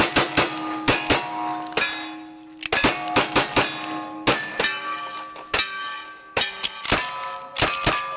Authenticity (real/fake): real